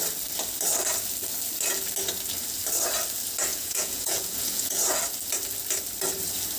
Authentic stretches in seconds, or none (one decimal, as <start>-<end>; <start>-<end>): 0.0-3.5; 4.8-6.6